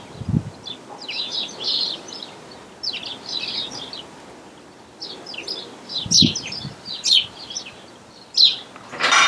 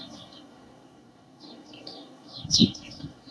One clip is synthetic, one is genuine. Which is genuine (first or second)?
first